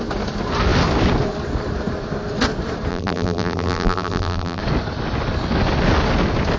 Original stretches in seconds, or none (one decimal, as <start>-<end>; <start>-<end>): 0.0-2.9; 4.6-6.6